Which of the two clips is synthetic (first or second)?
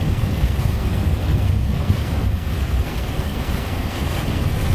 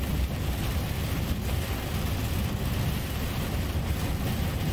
first